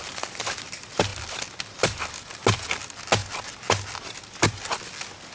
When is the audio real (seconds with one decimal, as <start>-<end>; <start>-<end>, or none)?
0.0-5.3